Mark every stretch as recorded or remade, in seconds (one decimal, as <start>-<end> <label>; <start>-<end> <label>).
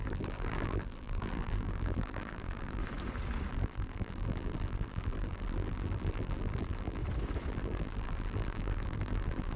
0.0-2.8 remade; 2.8-3.5 recorded; 3.5-7.0 remade; 7.0-7.5 recorded; 7.5-9.6 remade